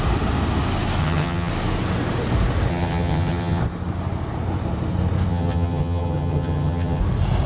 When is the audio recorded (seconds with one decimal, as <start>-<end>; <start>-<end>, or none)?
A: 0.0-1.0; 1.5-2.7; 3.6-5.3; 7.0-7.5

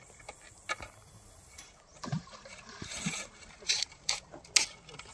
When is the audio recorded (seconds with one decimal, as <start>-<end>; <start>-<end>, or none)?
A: 0.0-1.9; 4.3-5.1

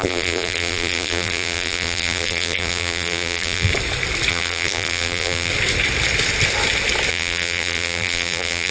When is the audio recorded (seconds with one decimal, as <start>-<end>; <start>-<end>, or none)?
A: 3.7-4.3; 5.5-7.1

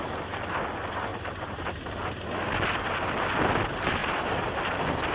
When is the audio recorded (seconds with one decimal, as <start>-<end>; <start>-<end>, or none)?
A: 0.0-1.1; 1.6-4.0; 4.6-5.1